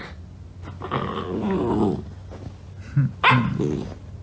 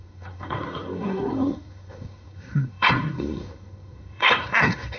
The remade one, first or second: second